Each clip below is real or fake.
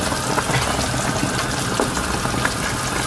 real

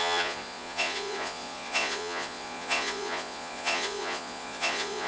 fake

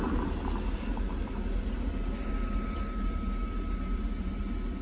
real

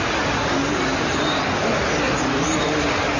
real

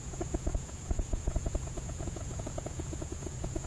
fake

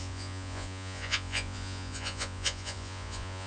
fake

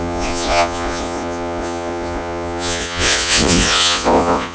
fake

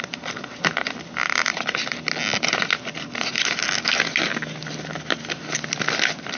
real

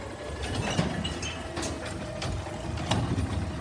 real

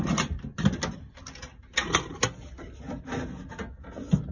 real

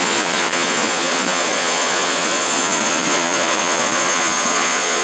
fake